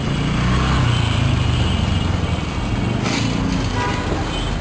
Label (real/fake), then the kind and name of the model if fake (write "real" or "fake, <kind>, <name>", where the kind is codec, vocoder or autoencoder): real